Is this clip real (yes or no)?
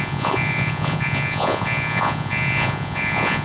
no